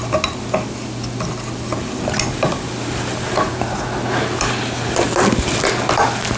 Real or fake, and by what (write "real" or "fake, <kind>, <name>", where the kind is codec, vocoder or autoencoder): real